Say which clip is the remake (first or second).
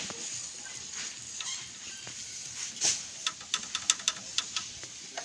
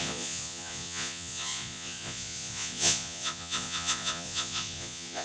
second